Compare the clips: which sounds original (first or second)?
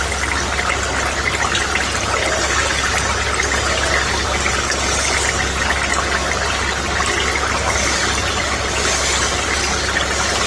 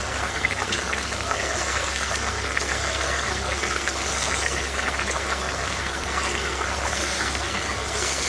first